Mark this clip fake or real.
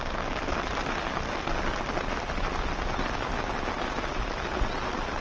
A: real